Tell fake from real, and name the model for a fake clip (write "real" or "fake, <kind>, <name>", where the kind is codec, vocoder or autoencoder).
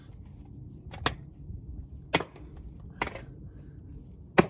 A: real